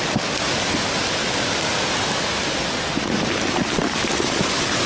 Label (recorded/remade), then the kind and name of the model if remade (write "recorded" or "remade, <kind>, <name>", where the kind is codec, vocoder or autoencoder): recorded